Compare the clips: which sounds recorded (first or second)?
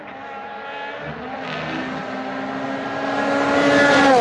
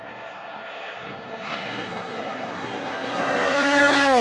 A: first